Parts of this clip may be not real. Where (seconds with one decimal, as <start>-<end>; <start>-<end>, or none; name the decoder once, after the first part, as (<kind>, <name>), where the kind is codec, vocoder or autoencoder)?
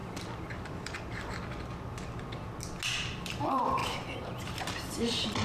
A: 3.2-5.4 (vocoder, BigVGAN v2)